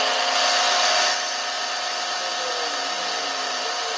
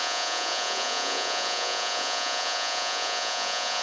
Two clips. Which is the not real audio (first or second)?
second